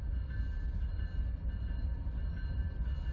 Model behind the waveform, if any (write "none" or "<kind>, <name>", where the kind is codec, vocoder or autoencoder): none